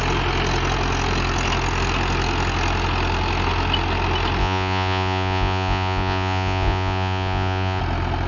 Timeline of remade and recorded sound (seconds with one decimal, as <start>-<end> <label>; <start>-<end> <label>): 0.0-4.4 recorded; 4.4-7.8 remade; 7.8-8.3 recorded